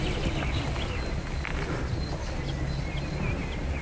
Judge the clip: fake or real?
real